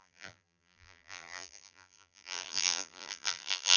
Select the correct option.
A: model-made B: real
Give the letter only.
A